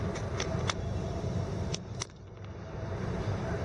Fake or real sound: fake